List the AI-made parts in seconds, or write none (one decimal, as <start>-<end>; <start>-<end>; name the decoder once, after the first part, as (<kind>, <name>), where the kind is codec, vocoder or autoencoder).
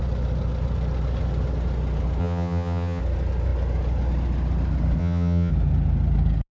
2.2-3.0 (vocoder, HiFi-GAN); 5.0-5.5